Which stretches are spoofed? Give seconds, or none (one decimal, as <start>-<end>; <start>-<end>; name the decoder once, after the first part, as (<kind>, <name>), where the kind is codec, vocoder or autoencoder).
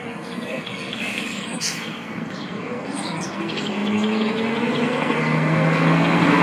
0.0-6.4 (codec, SNAC)